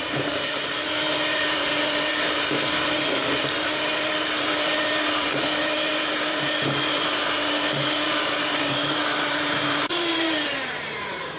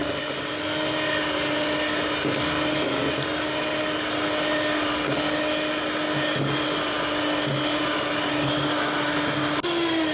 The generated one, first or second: first